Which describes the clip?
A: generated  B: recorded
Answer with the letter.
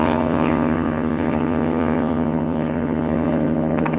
A